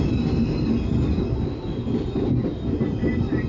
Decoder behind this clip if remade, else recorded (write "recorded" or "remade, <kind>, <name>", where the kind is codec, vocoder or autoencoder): recorded